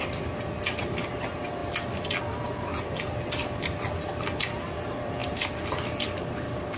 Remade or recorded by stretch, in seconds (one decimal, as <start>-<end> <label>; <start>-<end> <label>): 0.0-6.8 recorded

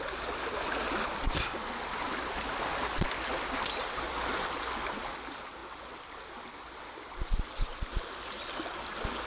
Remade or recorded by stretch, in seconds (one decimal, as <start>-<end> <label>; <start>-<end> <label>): 0.0-9.3 recorded

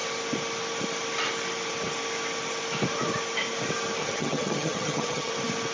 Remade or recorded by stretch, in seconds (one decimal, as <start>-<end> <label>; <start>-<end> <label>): 0.0-4.0 recorded; 4.0-5.3 remade; 5.3-5.7 recorded

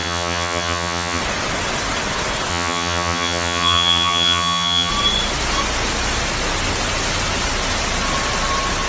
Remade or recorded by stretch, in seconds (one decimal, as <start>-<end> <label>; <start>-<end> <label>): 0.0-1.2 remade; 1.2-2.5 recorded; 2.5-4.9 remade; 4.9-8.9 recorded

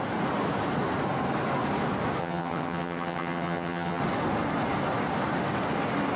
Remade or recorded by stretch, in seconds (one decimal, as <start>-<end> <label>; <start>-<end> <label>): 0.0-2.2 recorded; 2.2-4.0 remade; 4.0-6.2 recorded

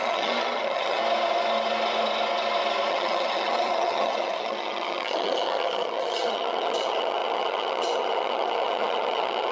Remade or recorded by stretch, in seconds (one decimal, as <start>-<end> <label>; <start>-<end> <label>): 0.0-1.0 remade; 1.0-2.9 recorded; 2.9-9.5 remade